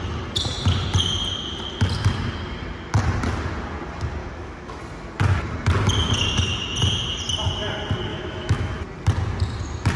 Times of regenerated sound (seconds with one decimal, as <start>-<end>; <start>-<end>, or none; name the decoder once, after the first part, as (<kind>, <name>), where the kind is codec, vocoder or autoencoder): 4.2-4.8 (autoencoder, DAC-VAE); 8.1-8.8